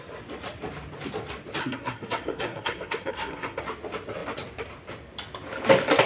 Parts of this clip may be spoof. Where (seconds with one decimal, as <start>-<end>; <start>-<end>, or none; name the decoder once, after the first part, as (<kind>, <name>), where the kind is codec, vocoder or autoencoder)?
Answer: 1.6-3.6 (codec, SNAC)